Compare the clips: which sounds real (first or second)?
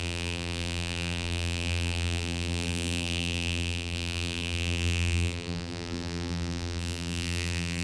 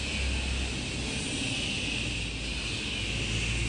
second